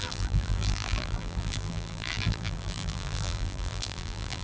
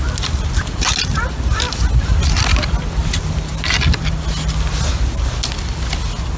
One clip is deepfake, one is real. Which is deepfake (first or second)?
first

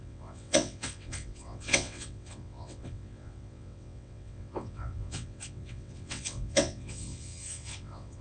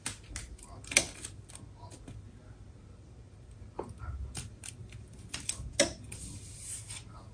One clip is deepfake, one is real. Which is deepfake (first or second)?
first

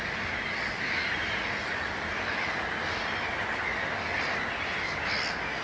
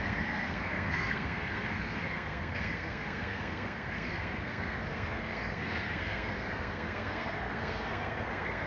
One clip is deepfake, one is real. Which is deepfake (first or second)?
second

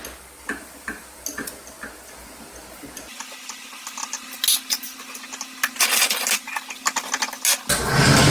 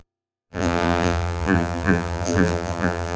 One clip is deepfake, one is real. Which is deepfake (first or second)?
second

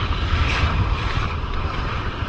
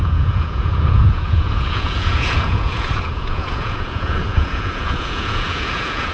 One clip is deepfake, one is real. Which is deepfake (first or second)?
second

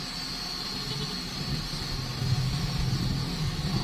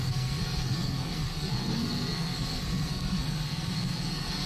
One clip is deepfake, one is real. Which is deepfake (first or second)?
second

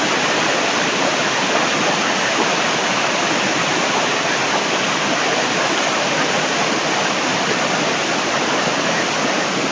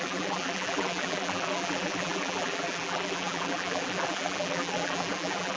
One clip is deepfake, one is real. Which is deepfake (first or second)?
second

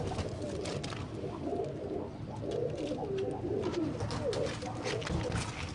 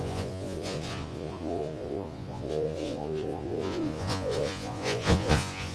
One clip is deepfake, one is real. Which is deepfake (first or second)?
second